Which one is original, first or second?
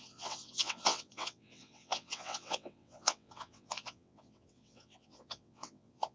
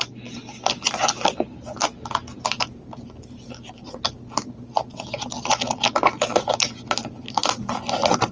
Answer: second